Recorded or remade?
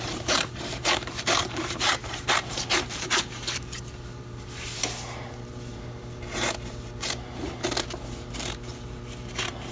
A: remade